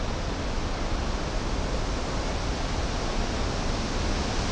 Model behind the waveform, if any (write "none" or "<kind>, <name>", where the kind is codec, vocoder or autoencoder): none